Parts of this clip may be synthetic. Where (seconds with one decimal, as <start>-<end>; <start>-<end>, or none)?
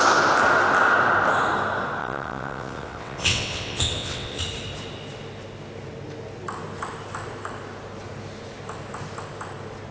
2.0-4.4